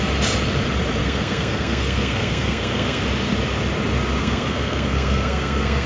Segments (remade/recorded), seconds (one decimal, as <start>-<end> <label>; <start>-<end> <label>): 0.0-1.0 recorded; 1.0-3.0 remade; 3.0-4.2 recorded; 4.2-5.9 remade